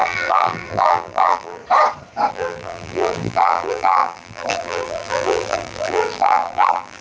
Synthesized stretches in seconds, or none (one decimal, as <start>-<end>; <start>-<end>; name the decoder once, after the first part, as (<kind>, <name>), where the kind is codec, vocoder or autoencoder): 0.0-1.6 (vocoder, BigVGAN v2); 2.3-7.0